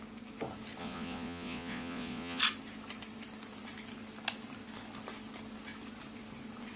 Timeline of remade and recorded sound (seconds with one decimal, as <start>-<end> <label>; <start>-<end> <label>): 0.0-0.8 recorded; 0.8-2.4 remade; 2.4-6.8 recorded

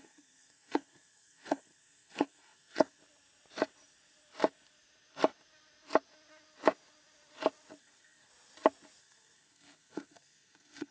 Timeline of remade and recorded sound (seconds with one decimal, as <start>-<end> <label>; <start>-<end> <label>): 0.0-3.0 remade; 3.0-7.8 recorded; 7.8-8.3 remade; 8.3-9.0 recorded; 9.0-10.9 remade

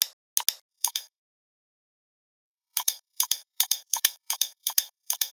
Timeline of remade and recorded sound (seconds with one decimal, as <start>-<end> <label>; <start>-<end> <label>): 0.0-0.7 recorded; 0.7-1.2 remade; 1.2-2.1 recorded; 2.1-5.3 remade

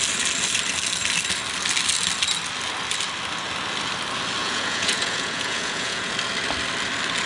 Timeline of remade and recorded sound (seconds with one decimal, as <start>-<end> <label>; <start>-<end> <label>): 0.0-4.4 recorded; 4.4-6.1 remade; 6.1-7.3 recorded

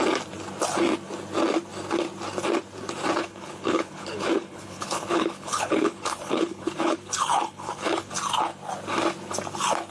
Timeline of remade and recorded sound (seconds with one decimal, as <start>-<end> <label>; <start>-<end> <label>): 0.0-3.2 recorded; 3.2-8.1 remade; 8.1-9.9 recorded

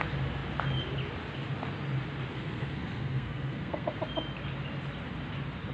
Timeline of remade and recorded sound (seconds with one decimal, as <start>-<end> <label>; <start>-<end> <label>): 0.0-2.3 recorded; 2.3-4.0 remade; 4.0-5.7 recorded